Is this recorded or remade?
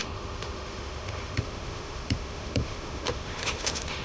remade